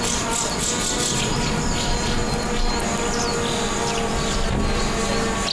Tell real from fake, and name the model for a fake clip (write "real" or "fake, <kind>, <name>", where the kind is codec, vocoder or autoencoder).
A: real